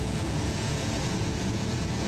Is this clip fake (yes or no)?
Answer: yes